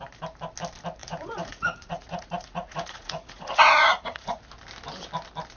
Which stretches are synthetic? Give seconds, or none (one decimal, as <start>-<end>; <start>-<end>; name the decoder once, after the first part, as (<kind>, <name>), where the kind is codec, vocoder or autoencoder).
1.0-4.4 (vocoder, Vocos)